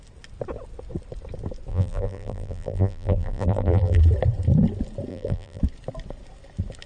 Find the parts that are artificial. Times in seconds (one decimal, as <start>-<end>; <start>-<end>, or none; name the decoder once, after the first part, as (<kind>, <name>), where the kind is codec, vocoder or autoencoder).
1.7-4.0 (vocoder, BigVGAN v2); 5.1-5.6